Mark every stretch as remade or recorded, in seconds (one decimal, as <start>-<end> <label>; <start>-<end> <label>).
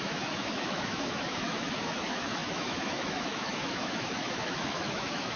0.0-5.4 remade